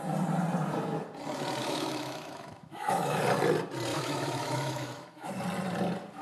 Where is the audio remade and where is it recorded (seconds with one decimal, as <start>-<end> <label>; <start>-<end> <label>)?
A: 0.0-1.6 recorded; 1.6-3.2 remade; 3.2-3.9 recorded; 3.9-5.3 remade; 5.3-6.2 recorded